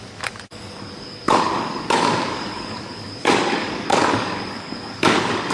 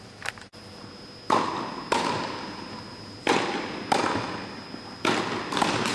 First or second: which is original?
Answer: second